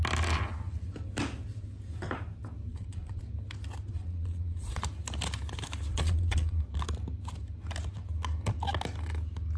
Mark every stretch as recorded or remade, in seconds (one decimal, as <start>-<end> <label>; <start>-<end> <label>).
0.0-2.7 recorded; 2.7-3.2 remade; 3.2-3.9 recorded; 3.9-4.8 remade; 4.8-5.9 recorded; 5.9-6.6 remade; 6.6-9.6 recorded